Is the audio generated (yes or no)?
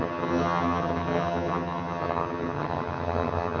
yes